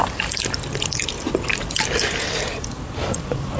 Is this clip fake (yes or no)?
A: no